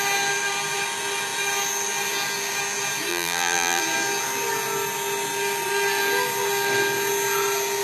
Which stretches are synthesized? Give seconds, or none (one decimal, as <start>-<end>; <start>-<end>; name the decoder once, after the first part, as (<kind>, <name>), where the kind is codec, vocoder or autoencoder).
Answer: 3.1-3.8 (vocoder, BigVGAN v2)